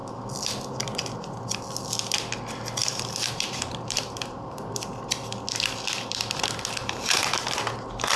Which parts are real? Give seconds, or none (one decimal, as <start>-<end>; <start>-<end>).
0.0-2.8; 4.7-6.8; 7.6-8.2